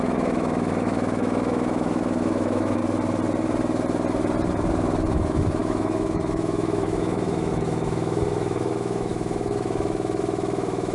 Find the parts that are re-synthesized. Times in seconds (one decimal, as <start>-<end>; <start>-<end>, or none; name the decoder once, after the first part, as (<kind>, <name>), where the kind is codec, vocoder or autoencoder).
0.0-2.8 (autoencoder, DAC-VAE); 5.1-10.9